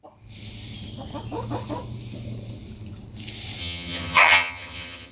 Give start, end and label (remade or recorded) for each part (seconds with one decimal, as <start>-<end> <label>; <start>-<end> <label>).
0.0-3.6 recorded; 3.6-5.1 remade